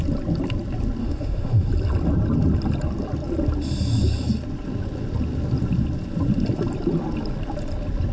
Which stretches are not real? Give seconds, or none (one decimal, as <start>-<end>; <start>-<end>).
1.0-1.7

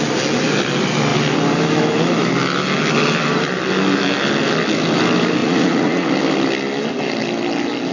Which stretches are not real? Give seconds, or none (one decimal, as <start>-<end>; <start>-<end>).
5.4-6.1

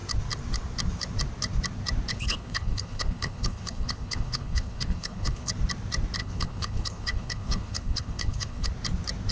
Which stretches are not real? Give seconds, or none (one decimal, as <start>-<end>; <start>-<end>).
2.1-5.5; 6.2-8.7

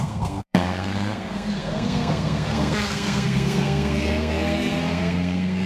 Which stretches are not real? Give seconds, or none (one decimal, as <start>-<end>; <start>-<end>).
0.0-5.7

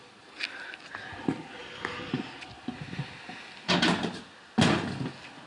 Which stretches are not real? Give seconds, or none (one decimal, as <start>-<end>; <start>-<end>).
1.6-2.1

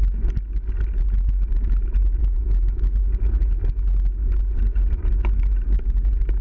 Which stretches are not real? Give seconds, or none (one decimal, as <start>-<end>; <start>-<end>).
2.2-2.8